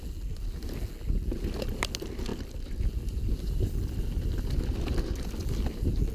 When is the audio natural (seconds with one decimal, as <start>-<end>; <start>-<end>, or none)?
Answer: 0.0-6.1